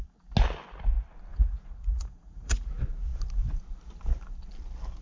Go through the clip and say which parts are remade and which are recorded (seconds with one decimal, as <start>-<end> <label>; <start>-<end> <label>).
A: 0.0-1.3 recorded; 1.3-2.7 remade; 2.7-5.0 recorded

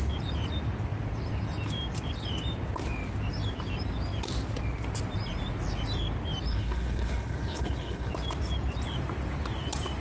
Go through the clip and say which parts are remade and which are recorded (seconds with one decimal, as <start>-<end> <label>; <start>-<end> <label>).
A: 0.0-6.5 recorded; 6.5-8.1 remade; 8.1-10.0 recorded

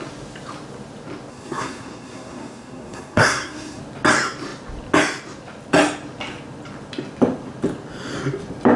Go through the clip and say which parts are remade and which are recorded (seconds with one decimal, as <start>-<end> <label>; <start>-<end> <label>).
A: 0.0-1.3 recorded; 1.3-3.8 remade; 3.8-8.8 recorded

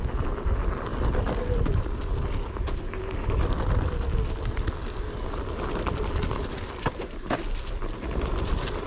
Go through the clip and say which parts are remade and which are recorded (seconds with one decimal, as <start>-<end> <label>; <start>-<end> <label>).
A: 0.0-8.9 recorded

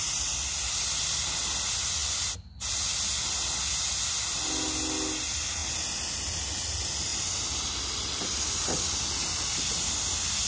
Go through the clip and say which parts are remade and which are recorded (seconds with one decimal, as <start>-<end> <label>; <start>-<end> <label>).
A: 0.0-10.5 recorded

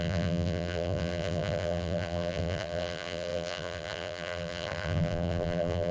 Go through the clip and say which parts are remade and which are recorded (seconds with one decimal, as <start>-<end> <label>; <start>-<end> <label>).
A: 0.0-5.9 remade

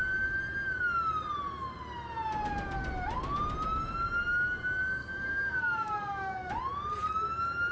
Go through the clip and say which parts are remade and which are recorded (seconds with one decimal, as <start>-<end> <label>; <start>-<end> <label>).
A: 0.0-5.0 recorded; 5.0-6.5 remade; 6.5-7.7 recorded

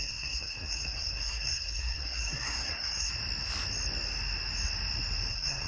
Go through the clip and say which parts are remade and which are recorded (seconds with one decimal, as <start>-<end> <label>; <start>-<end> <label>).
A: 0.0-3.1 remade; 3.1-5.3 recorded; 5.3-5.7 remade